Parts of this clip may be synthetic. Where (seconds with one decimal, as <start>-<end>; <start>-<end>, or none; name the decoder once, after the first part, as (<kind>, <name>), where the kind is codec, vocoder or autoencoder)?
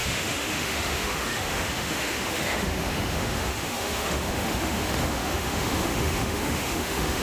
0.0-7.2 (autoencoder, DAC-VAE)